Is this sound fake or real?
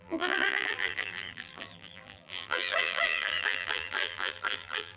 fake